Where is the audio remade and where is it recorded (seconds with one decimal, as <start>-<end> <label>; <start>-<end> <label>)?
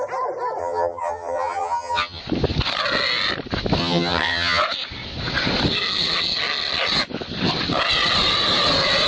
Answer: 0.0-0.6 recorded; 0.6-2.2 remade; 2.2-3.8 recorded; 3.8-4.6 remade; 4.6-9.1 recorded